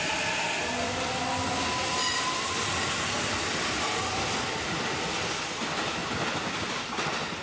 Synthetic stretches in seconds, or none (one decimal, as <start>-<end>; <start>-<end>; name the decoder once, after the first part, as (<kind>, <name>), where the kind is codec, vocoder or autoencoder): none